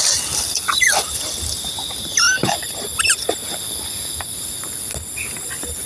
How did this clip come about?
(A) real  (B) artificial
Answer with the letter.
A